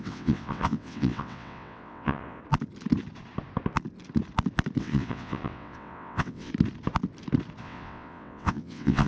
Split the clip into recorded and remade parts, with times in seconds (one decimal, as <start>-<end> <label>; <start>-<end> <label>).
0.0-2.4 remade; 2.4-4.8 recorded; 4.8-6.5 remade; 6.5-7.6 recorded; 7.6-9.1 remade